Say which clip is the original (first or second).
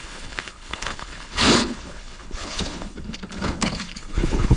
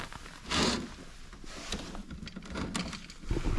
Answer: second